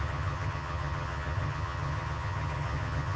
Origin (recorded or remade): remade